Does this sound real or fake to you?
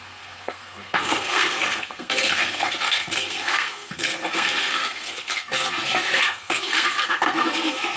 fake